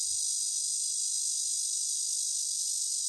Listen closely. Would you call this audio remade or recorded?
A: recorded